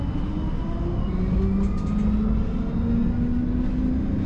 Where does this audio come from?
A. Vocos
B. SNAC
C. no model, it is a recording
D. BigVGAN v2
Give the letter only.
C